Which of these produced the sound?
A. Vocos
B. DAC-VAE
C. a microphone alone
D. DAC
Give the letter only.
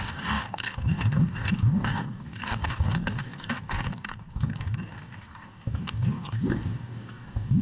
D